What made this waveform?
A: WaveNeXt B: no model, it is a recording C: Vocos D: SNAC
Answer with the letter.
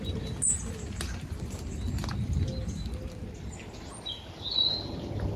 B